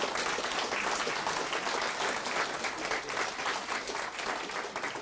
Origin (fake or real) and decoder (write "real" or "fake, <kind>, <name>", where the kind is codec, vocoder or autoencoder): real